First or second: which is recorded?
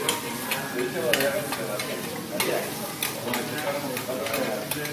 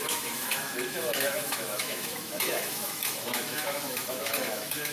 first